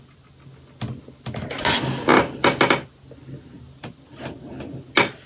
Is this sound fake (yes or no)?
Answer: no